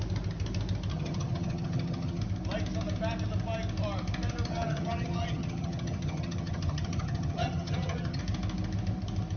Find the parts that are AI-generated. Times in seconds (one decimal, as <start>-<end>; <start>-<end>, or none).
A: 0.9-2.2; 4.5-8.2